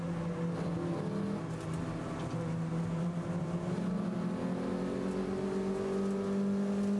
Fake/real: real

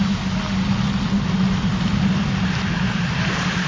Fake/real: real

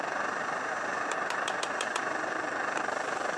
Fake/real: fake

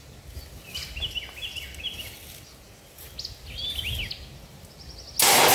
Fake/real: real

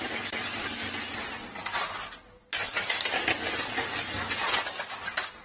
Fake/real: real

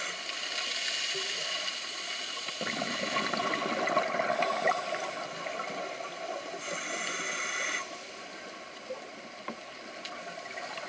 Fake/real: real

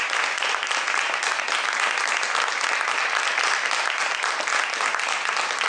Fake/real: real